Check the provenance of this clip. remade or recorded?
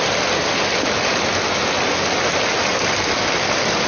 recorded